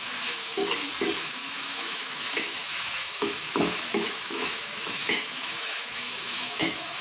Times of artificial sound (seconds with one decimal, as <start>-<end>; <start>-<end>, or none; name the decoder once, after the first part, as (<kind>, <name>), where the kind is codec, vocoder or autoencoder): 0.0-0.6 (autoencoder, DAC-VAE); 1.2-7.0